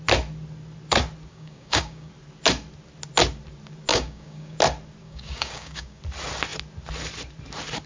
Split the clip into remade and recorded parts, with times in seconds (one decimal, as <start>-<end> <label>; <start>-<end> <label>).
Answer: 0.0-1.3 recorded; 1.3-2.1 remade; 2.1-3.9 recorded; 3.9-4.6 remade; 4.6-5.0 recorded; 5.0-6.0 remade; 6.0-7.9 recorded